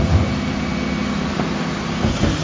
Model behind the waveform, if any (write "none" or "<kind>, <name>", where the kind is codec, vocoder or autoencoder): none